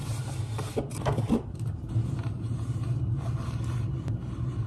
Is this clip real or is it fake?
fake